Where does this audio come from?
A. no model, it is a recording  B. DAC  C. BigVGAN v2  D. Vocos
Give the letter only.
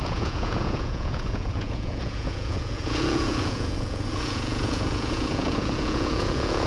D